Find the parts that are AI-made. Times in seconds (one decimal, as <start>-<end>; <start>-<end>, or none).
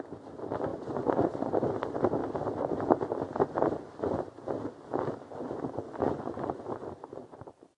0.7-1.5; 5.4-6.6